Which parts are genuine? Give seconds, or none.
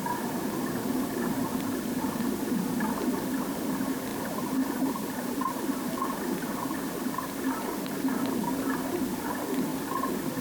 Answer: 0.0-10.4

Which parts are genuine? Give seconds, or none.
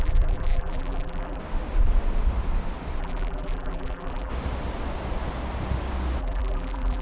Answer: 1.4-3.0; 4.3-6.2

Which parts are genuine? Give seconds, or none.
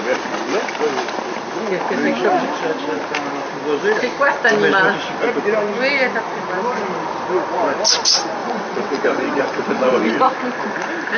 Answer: 0.0-8.4; 10.2-11.2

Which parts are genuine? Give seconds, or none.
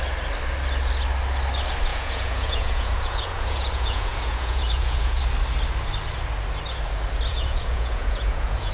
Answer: 0.0-1.9; 5.2-7.3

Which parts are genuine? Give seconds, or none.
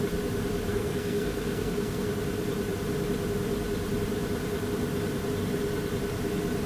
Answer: 0.0-0.7; 2.1-6.7